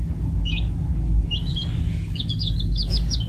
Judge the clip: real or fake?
fake